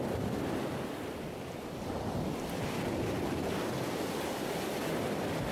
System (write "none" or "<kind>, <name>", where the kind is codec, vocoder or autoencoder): none